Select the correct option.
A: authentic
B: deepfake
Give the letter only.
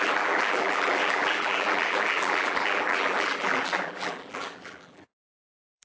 B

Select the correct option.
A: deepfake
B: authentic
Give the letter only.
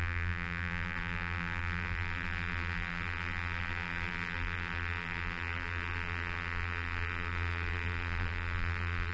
A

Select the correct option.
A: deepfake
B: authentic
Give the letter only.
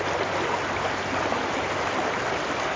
B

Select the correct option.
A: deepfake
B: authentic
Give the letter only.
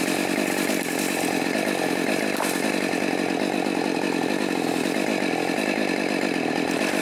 B